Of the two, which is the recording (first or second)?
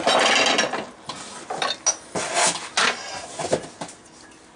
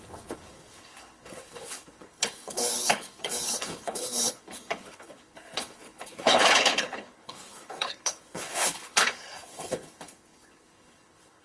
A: first